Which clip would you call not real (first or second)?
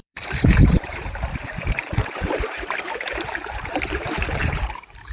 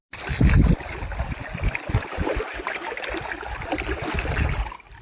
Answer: first